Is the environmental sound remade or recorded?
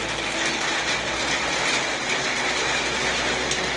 recorded